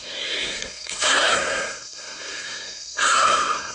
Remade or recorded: remade